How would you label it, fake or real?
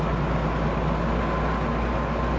real